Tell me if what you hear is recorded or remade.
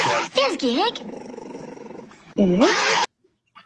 remade